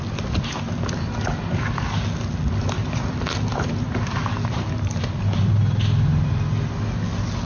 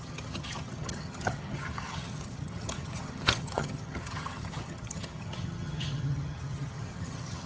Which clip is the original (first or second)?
first